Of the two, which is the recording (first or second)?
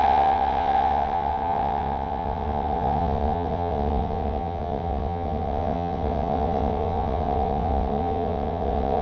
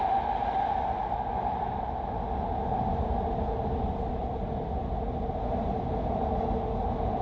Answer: second